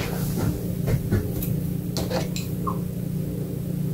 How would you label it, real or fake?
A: real